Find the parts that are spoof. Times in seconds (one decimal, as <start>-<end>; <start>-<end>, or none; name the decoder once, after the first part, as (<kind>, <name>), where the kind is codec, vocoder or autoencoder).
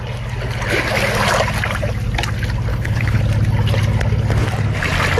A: 2.7-3.2 (codec, HILCodec)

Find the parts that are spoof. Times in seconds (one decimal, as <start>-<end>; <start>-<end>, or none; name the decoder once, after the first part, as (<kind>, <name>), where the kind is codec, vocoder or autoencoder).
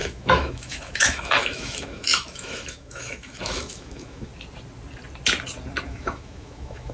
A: 0.0-4.3 (autoencoder, DAC-VAE); 5.8-6.9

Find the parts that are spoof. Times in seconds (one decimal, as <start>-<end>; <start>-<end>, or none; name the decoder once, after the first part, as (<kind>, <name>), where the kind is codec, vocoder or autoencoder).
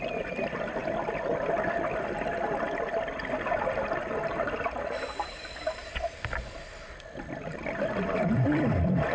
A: none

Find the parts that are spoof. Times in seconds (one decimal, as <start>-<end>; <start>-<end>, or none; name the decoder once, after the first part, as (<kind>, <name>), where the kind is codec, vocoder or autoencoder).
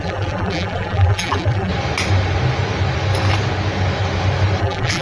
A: 0.0-1.7 (vocoder, BigVGAN v2); 4.6-5.0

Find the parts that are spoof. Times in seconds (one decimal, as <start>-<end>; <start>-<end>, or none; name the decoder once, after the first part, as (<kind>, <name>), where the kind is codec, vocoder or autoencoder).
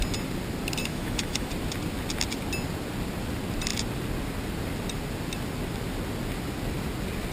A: 0.8-1.5 (autoencoder, DAC-VAE)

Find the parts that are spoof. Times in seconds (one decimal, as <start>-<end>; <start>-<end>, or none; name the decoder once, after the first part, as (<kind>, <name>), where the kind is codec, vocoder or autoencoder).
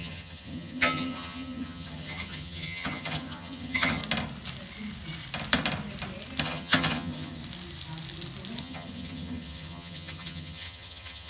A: 0.0-4.0 (vocoder, HiFi-GAN); 6.4-7.4; 8.6-11.3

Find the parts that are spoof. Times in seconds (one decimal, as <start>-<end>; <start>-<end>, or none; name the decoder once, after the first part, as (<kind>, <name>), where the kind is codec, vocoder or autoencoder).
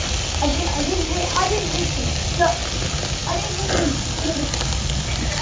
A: 0.5-1.4 (vocoder, BigVGAN v2)